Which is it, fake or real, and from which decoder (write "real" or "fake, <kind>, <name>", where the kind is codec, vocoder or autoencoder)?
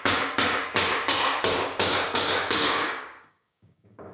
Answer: fake, codec, DAC